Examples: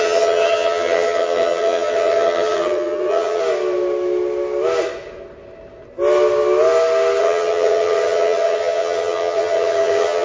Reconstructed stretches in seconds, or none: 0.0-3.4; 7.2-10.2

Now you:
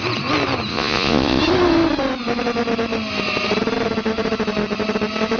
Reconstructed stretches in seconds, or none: 0.7-1.4